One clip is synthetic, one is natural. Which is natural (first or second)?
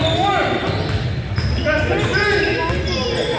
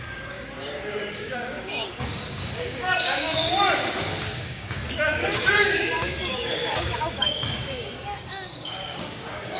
first